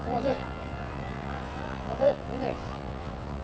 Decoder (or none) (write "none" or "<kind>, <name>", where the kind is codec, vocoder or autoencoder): vocoder, WaveNeXt